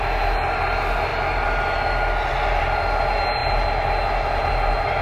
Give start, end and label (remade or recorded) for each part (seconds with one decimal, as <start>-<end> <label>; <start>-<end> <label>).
0.0-5.0 recorded